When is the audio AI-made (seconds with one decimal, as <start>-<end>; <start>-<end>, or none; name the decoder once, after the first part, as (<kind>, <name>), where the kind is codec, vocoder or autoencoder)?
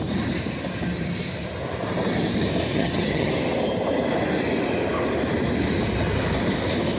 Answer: 2.7-3.3 (vocoder, HiFi-GAN)